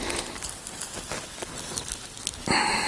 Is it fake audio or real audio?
real